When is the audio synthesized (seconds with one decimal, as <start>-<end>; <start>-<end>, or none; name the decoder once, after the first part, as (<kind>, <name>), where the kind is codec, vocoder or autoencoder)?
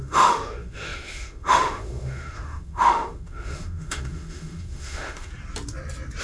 0.0-5.3 (autoencoder, DAC-VAE)